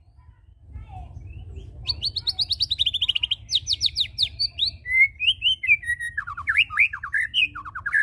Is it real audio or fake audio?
real